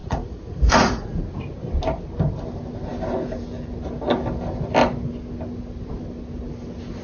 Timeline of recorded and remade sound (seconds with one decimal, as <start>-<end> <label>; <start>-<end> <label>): 0.0-1.2 remade; 1.2-7.0 recorded

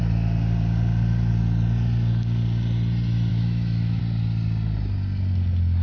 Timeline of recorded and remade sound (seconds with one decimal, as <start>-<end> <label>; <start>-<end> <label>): 0.0-3.3 recorded; 3.3-4.0 remade; 4.0-5.8 recorded